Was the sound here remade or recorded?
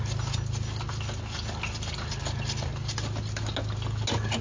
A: recorded